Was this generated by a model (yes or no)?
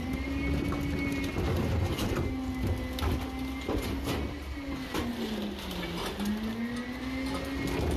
no